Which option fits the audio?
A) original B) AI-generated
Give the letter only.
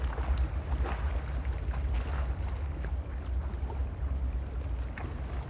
A